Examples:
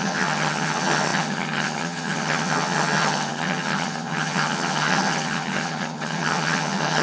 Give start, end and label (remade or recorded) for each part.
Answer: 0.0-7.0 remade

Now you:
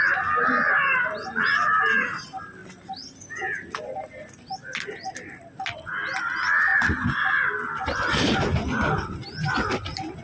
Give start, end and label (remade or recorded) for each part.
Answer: 0.0-10.2 recorded

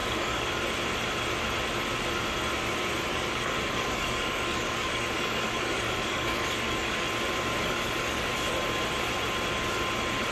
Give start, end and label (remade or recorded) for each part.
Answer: 0.0-0.6 remade; 0.6-3.1 recorded; 3.1-7.1 remade; 7.1-7.6 recorded; 7.6-8.3 remade; 8.3-10.3 recorded